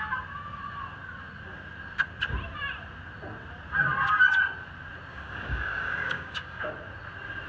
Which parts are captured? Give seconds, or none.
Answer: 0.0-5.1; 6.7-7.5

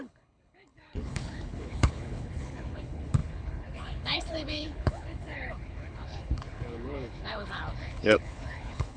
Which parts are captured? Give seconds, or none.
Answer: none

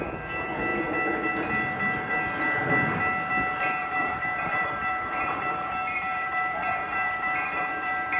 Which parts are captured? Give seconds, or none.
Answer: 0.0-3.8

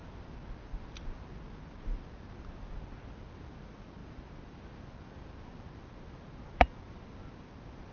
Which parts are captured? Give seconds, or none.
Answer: 0.0-7.9

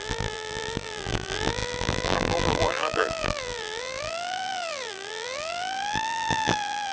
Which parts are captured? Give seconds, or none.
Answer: none